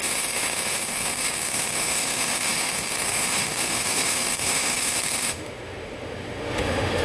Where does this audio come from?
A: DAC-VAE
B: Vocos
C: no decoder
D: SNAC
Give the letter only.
A